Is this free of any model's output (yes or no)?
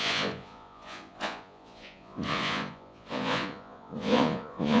no